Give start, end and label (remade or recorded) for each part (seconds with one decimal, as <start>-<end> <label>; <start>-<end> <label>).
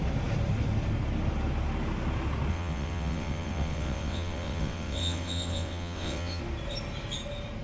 0.0-2.5 recorded; 2.5-6.4 remade; 6.4-7.6 recorded